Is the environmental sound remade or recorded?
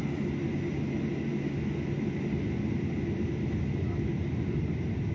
recorded